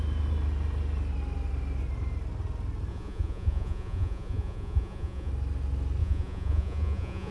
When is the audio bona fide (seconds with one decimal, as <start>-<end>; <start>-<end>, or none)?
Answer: 0.0-2.9; 5.3-6.0

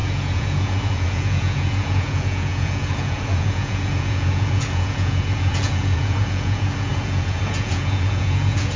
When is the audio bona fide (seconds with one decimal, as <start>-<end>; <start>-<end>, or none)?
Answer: none

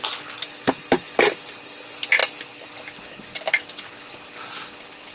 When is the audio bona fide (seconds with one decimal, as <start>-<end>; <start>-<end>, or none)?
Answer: 0.0-5.1

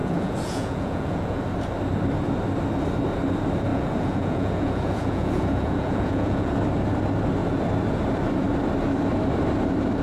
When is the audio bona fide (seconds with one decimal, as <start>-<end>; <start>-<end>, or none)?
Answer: 1.4-3.7; 6.5-10.0

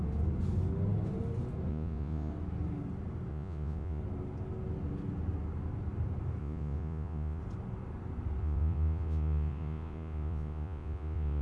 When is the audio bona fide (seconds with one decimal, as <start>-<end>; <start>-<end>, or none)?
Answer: 0.0-1.7; 2.3-3.3; 4.0-6.4; 7.4-8.4

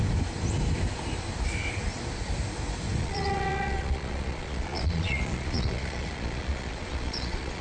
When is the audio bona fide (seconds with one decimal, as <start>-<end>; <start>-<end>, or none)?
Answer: 0.0-3.0

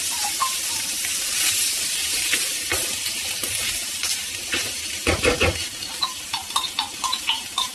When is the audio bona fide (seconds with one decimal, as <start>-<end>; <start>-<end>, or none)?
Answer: 0.0-7.7

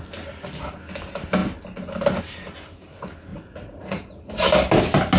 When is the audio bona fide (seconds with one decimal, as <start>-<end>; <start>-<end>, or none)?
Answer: 0.0-3.3; 4.2-5.2